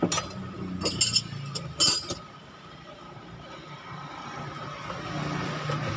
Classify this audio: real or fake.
real